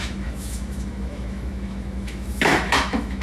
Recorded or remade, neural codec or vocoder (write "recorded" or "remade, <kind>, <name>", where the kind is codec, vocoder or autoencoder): remade, autoencoder, DAC-VAE